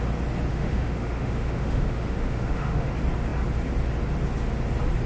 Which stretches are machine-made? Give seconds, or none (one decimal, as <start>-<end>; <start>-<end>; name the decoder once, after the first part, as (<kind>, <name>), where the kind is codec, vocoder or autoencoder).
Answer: 0.5-2.9 (autoencoder, DAC-VAE)